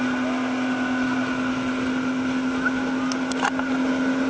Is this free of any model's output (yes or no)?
yes